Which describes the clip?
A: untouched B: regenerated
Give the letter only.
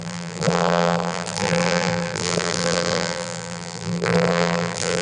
B